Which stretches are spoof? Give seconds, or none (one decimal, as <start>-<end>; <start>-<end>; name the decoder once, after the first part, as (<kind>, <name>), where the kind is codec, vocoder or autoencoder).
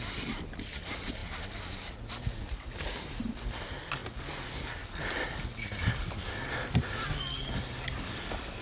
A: none